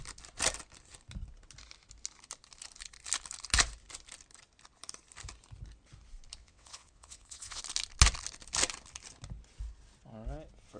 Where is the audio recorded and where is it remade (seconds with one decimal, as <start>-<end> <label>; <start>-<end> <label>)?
0.0-6.4 recorded; 6.4-7.6 remade; 7.6-10.8 recorded